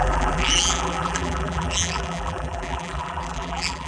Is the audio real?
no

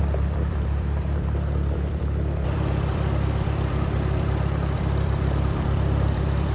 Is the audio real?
no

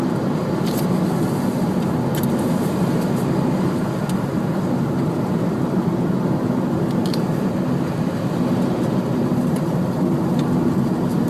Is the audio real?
yes